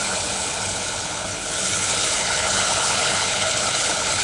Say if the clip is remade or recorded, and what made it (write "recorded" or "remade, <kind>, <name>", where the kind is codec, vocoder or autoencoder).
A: remade, codec, HILCodec